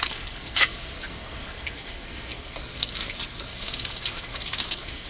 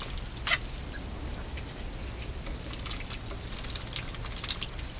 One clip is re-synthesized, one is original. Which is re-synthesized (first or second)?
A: first